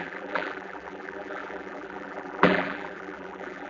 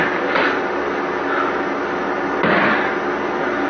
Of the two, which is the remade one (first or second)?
first